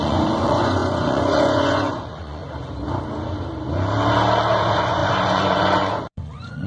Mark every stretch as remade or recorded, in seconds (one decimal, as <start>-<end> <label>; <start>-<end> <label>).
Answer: 0.0-2.4 remade; 2.4-4.6 recorded; 4.6-6.7 remade